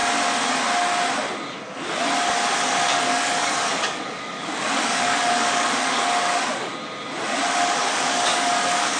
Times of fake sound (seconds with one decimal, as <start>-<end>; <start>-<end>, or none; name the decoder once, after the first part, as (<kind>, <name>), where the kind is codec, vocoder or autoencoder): 2.6-6.7 (codec, DAC); 7.5-9.0